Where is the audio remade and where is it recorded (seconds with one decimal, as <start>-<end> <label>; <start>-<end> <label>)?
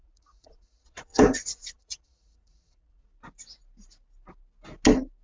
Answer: 0.0-3.1 remade; 3.1-5.2 recorded